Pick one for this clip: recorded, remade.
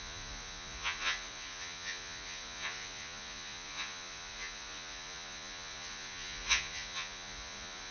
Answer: remade